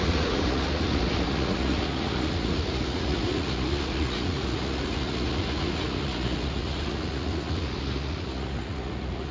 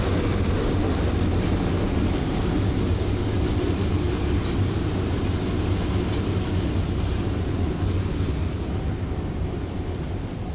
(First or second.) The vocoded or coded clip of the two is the first